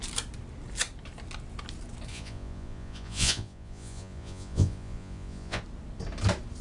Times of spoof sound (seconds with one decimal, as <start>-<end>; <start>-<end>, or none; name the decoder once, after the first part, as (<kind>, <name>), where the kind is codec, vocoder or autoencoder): 2.1-5.6 (vocoder, Vocos)